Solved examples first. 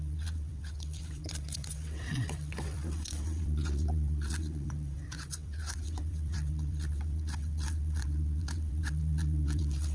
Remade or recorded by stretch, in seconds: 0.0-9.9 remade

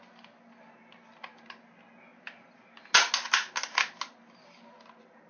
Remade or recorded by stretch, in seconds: 0.0-5.3 recorded

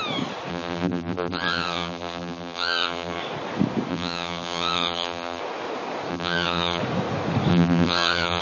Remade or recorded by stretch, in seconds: 0.0-0.5 recorded; 0.5-3.2 remade; 3.2-3.9 recorded; 3.9-5.4 remade; 5.4-6.1 recorded; 6.1-6.8 remade; 6.8-7.5 recorded; 7.5-8.4 remade